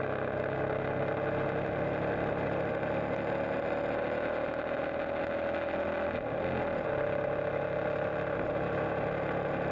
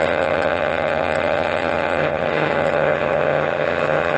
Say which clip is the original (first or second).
first